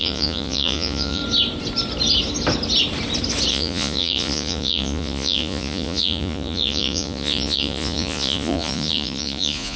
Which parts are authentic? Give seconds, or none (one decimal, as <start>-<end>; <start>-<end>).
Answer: 1.2-3.5